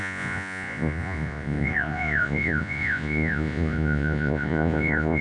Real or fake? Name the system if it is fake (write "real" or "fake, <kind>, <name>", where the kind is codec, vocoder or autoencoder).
fake, vocoder, Vocos